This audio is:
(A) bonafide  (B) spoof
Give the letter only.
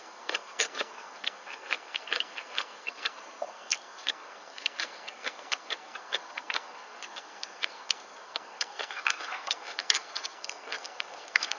B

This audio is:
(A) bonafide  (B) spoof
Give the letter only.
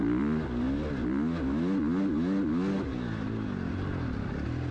A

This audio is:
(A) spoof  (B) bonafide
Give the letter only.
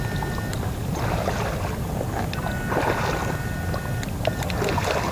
B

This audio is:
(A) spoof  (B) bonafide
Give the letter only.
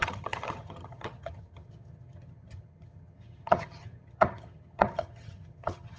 A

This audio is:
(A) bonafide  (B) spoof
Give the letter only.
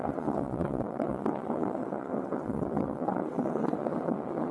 B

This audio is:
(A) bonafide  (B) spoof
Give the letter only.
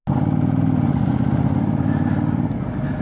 A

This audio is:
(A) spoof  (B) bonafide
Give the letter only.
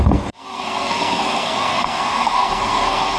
A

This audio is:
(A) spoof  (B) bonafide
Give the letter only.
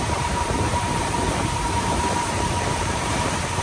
A